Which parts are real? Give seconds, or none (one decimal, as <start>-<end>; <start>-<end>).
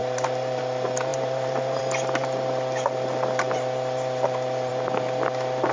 0.6-1.1; 1.8-5.7